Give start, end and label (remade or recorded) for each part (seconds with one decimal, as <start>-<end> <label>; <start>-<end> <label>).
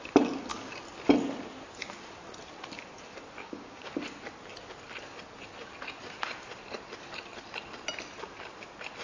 0.0-3.4 recorded; 3.4-3.9 remade; 3.9-9.0 recorded